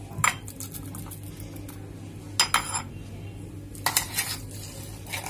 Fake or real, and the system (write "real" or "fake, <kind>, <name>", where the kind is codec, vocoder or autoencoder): real